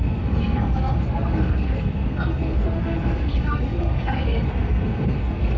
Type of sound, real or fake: fake